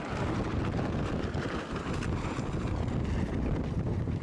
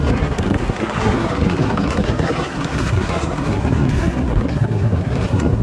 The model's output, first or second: second